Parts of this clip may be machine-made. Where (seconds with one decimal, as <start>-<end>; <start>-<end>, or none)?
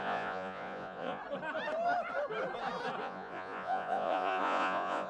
0.0-1.2; 3.0-5.1